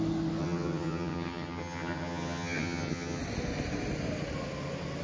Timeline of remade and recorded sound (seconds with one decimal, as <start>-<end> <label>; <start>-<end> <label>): 0.0-0.4 recorded; 0.4-3.2 remade; 3.2-5.0 recorded